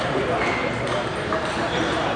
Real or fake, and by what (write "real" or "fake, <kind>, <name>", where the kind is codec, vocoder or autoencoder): fake, vocoder, BigVGAN v2